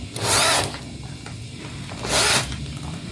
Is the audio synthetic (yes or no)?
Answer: no